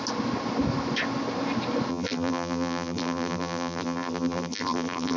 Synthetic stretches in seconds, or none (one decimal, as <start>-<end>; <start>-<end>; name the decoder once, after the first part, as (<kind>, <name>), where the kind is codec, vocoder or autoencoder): 1.9-5.2 (vocoder, BigVGAN v2)